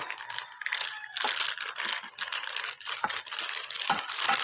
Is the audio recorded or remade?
recorded